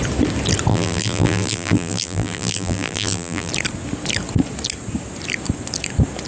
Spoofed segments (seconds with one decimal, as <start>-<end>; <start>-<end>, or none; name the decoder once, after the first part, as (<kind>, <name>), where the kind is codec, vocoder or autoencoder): 0.7-3.5 (vocoder, BigVGAN v2)